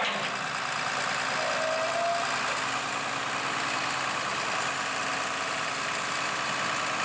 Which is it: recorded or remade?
recorded